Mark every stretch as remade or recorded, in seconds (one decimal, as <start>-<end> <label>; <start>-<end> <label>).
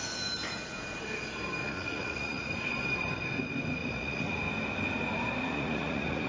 0.0-1.6 recorded; 1.6-2.5 remade; 2.5-3.8 recorded; 3.8-4.4 remade; 4.4-5.4 recorded; 5.4-6.3 remade